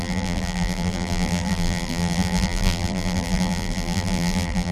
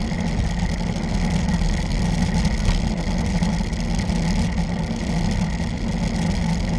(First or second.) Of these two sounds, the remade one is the first